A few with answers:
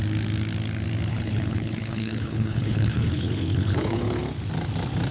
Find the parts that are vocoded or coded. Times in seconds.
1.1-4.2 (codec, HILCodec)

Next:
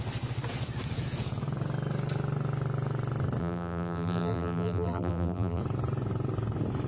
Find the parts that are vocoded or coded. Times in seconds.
3.4-5.6 (vocoder, BigVGAN v2)

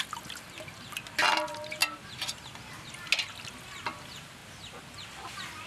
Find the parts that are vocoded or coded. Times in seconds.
none

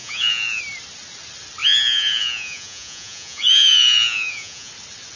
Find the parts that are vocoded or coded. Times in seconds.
0.0-0.6 (vocoder, Vocos); 1.6-4.7

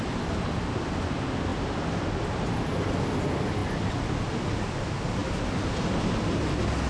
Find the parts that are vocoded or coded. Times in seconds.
none